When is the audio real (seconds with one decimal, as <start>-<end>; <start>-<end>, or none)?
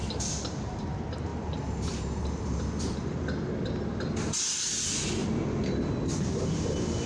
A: 0.8-1.3; 3.2-7.1